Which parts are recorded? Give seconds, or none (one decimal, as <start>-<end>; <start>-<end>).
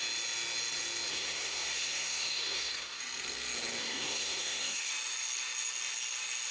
0.0-1.1; 3.0-3.8; 4.9-6.5